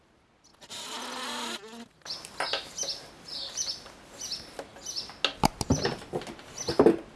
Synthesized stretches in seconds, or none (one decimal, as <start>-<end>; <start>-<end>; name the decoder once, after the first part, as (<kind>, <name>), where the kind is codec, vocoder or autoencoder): none